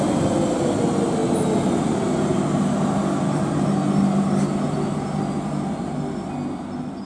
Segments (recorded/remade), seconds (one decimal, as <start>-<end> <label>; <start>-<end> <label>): 0.0-7.0 recorded